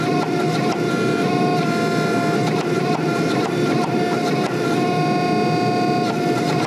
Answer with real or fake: real